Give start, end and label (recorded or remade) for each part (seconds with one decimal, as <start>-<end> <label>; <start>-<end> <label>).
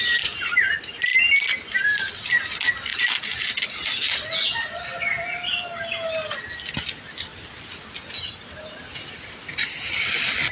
0.0-10.5 recorded